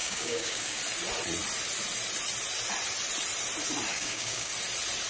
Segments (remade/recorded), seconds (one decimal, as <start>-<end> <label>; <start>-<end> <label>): 0.0-0.8 remade; 0.8-3.9 recorded; 3.9-4.5 remade; 4.5-5.1 recorded